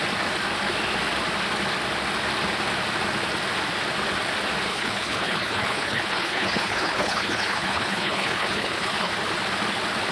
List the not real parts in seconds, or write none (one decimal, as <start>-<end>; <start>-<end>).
4.7-9.1